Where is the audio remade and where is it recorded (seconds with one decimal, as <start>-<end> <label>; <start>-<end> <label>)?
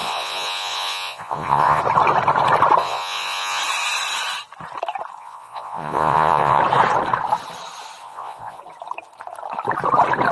0.0-1.8 remade; 1.8-2.8 recorded; 2.8-3.6 remade; 3.6-5.2 recorded; 5.2-6.6 remade; 6.6-8.0 recorded; 8.0-8.6 remade; 8.6-10.3 recorded